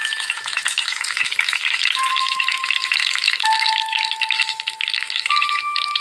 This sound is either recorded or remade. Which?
remade